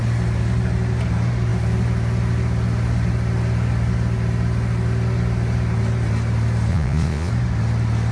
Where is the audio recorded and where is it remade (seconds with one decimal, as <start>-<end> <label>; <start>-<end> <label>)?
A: 0.0-6.7 recorded; 6.7-7.3 remade; 7.3-8.1 recorded